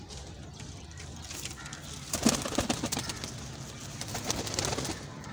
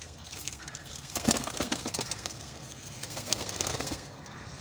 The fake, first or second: second